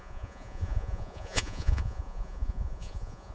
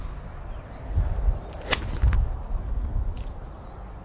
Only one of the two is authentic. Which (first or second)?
second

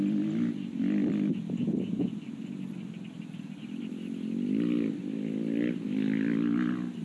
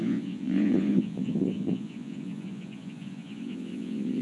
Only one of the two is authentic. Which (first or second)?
first